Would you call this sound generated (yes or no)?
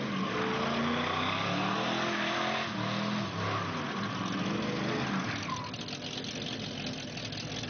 no